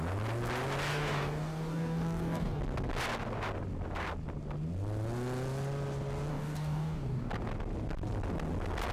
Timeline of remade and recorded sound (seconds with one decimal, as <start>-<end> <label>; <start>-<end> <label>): 0.0-0.9 recorded; 0.9-2.6 remade; 2.6-6.3 recorded; 6.3-7.3 remade; 7.3-8.9 recorded